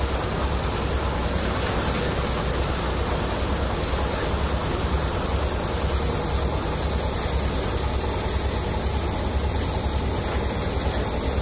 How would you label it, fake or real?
real